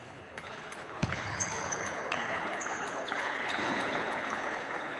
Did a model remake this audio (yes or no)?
yes